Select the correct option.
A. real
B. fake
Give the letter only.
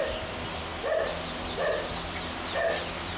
A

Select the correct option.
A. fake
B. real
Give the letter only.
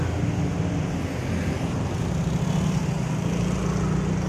B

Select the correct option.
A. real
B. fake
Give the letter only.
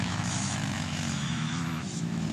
B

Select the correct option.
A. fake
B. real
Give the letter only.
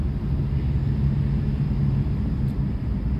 B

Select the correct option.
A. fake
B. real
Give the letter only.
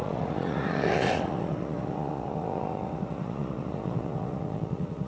A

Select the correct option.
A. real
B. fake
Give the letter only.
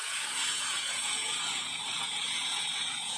B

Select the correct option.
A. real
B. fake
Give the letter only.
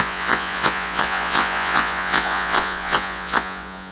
B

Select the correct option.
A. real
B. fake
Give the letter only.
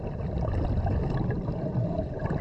A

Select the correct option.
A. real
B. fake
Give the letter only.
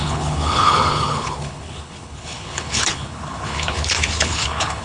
B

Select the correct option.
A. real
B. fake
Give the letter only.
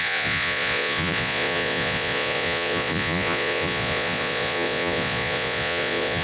B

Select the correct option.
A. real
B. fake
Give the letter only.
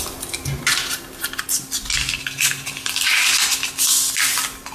A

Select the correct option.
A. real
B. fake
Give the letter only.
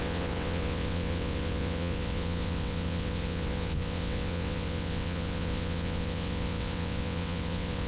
B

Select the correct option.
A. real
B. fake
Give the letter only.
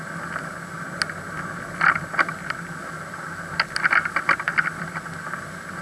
A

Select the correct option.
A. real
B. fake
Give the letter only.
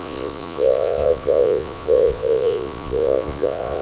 B